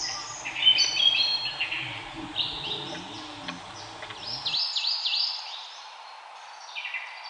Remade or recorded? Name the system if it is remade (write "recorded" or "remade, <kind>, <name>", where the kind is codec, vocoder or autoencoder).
recorded